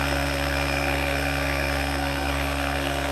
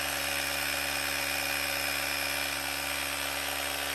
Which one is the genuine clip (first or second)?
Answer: second